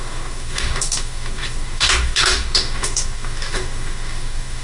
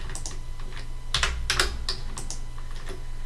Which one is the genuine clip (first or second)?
second